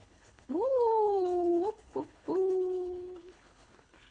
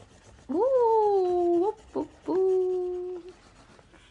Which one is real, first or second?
second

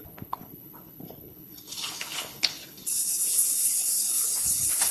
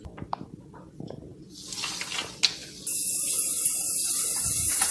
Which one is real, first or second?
second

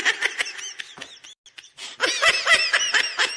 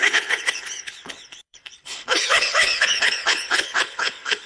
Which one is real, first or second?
first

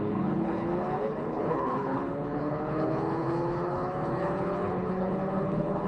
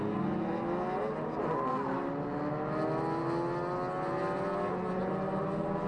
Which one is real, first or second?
second